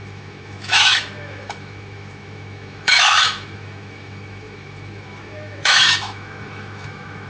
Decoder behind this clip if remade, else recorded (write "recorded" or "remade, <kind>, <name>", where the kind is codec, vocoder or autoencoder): remade, autoencoder, DAC-VAE